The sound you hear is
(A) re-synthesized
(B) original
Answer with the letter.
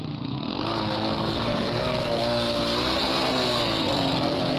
A